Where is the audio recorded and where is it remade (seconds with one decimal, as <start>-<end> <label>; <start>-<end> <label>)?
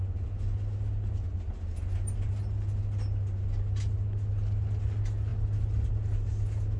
0.0-6.8 recorded